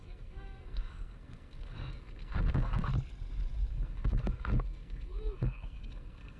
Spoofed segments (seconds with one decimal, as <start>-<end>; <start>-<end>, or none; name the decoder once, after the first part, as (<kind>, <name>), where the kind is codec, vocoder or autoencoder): 0.0-2.9 (codec, SNAC); 3.7-6.4